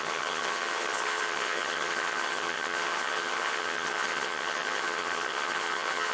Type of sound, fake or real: fake